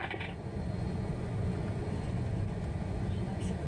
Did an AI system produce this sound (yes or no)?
yes